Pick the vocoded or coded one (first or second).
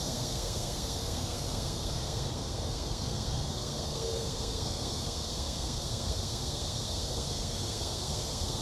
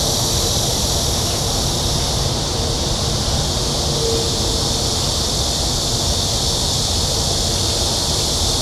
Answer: first